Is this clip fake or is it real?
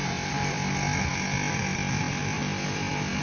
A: real